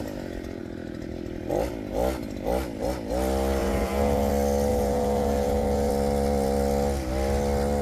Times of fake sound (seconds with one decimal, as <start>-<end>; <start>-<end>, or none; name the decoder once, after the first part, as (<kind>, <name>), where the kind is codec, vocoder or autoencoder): 3.6-4.3 (vocoder, Vocos); 4.7-5.9